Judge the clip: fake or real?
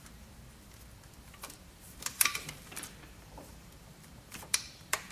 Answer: fake